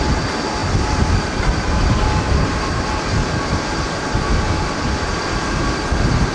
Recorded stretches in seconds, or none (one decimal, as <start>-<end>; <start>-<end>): 0.0-3.2; 4.8-6.3